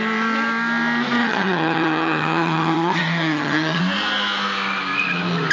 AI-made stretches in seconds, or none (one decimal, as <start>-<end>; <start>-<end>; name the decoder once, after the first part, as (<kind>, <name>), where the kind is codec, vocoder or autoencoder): 1.2-3.8 (vocoder, HiFi-GAN)